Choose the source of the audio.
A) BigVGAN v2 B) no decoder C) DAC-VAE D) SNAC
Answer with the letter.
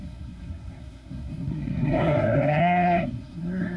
D